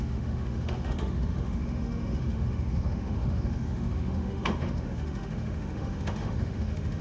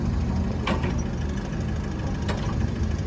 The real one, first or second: second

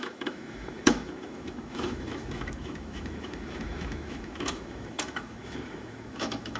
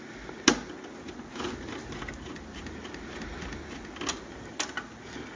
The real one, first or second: second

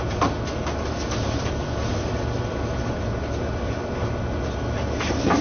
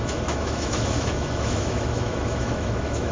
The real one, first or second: first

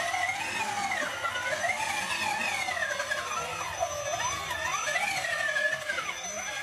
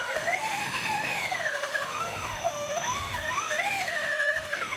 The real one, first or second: first